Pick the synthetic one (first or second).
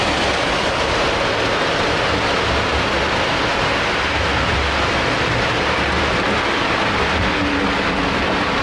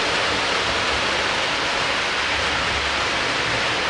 second